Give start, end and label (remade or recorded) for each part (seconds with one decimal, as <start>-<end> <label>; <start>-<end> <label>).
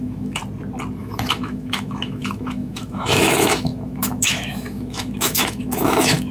0.0-0.4 remade; 0.4-1.0 recorded; 1.0-6.3 remade